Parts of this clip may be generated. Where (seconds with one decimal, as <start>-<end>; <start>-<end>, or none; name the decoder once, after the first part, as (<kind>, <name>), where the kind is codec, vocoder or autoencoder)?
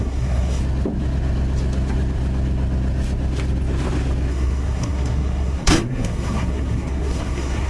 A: 0.0-0.6 (codec, SNAC); 4.3-7.7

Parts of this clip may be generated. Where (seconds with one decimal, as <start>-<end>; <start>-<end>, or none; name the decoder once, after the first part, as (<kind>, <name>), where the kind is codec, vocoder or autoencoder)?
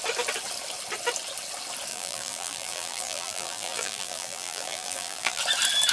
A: 1.9-5.4 (vocoder, BigVGAN v2)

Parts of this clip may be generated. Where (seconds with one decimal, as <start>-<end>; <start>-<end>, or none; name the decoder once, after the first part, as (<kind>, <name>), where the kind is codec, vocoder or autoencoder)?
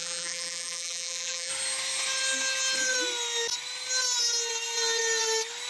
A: 0.0-1.5 (vocoder, BigVGAN v2)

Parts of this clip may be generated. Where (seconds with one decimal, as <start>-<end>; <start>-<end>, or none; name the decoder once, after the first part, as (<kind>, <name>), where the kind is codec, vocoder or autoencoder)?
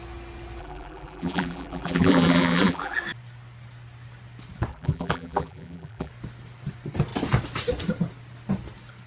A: 0.6-3.0 (vocoder, BigVGAN v2); 4.7-6.1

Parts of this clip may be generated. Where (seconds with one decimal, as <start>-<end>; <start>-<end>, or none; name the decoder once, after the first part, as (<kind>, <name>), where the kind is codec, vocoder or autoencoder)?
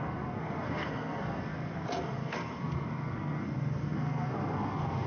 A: 0.0-5.1 (codec, SNAC)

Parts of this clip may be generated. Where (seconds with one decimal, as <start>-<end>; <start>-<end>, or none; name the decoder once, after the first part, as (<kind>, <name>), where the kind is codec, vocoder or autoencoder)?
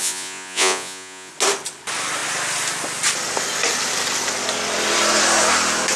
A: 0.0-1.3 (vocoder, Vocos)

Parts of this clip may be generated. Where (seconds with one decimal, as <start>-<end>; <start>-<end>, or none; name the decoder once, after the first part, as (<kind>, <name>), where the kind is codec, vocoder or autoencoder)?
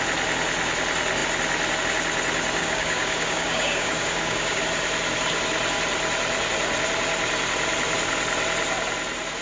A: 2.6-4.6 (codec, DAC)